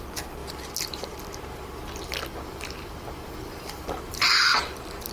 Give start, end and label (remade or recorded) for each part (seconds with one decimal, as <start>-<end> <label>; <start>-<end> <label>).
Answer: 0.0-5.1 remade